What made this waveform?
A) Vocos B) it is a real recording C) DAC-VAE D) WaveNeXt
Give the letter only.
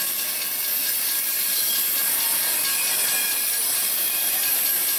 B